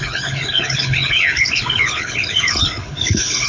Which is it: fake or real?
fake